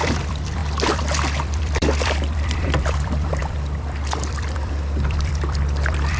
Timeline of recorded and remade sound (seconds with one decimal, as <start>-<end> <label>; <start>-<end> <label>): 0.0-6.2 remade